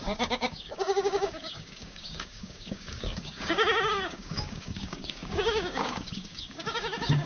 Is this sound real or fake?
fake